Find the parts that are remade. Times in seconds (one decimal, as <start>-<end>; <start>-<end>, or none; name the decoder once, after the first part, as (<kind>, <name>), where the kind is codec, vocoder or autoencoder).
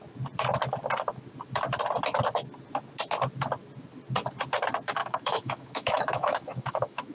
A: 5.0-7.1 (autoencoder, DAC-VAE)